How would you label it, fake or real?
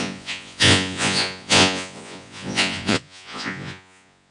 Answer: fake